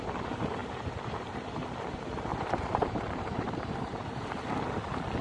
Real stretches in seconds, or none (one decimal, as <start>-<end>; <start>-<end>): 0.0-0.6; 1.6-2.3; 4.3-5.2